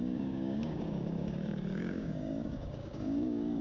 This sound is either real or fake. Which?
fake